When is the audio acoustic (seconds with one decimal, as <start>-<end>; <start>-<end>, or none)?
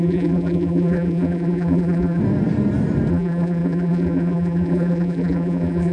2.2-3.1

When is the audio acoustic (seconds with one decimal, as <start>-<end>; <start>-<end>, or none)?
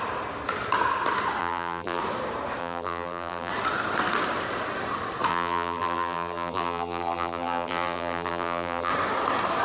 0.0-1.4; 2.0-2.6; 3.5-5.3; 8.9-9.6